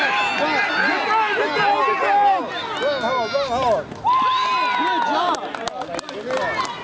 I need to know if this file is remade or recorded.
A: recorded